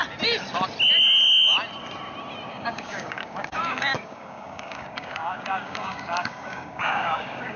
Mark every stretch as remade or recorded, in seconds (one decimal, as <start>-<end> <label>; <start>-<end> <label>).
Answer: 0.0-2.5 recorded; 2.5-7.6 remade